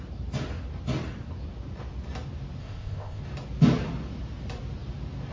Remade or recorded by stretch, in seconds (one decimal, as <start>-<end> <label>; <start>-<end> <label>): 0.0-2.6 recorded; 2.6-3.2 remade; 3.2-5.3 recorded